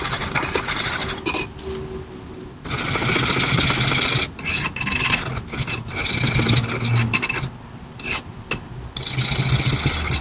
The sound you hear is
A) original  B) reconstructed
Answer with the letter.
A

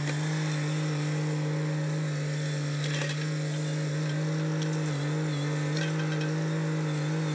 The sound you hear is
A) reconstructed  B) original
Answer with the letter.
B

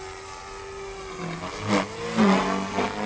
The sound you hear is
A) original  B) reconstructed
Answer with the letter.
A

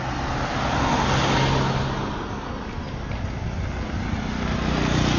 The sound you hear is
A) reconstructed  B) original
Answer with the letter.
B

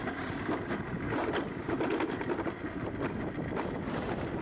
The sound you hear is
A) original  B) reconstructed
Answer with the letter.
A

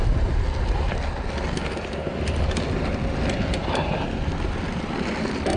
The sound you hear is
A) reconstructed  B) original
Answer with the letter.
B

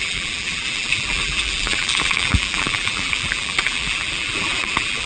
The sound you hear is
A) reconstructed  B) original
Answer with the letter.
A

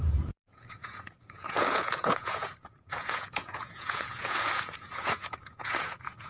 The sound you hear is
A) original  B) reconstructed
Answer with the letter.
B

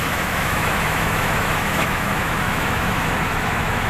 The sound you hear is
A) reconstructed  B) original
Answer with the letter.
A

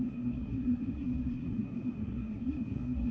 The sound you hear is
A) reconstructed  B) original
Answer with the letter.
A